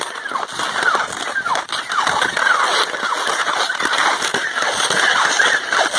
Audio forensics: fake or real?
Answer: real